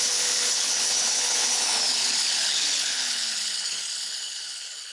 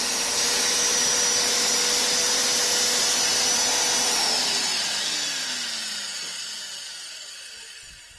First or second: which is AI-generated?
first